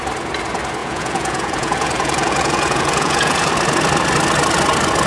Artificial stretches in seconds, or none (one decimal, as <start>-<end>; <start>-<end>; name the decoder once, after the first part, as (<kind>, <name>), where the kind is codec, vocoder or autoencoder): 0.8-3.5 (vocoder, Vocos)